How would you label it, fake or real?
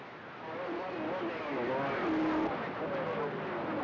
real